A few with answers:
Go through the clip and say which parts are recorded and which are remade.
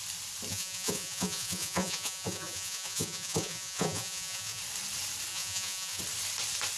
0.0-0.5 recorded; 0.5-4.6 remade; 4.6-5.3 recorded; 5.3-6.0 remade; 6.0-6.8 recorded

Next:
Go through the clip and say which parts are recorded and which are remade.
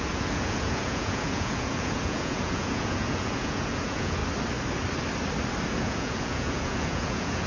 0.0-4.2 remade; 4.2-5.7 recorded; 5.7-7.5 remade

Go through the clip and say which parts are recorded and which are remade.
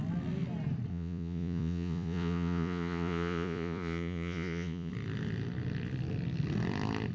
0.0-0.9 recorded; 0.9-4.9 remade; 4.9-7.1 recorded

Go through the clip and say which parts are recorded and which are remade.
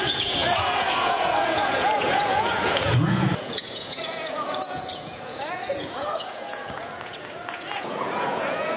0.0-8.8 remade